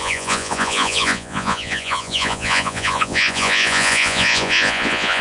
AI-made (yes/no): yes